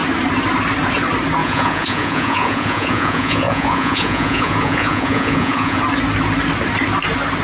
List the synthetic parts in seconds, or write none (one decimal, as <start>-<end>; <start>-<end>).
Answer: 1.4-5.8